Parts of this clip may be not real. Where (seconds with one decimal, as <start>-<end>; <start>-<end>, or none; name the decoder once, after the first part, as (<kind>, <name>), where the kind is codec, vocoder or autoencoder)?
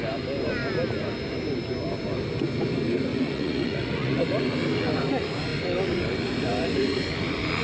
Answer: 3.1-4.2 (vocoder, Vocos)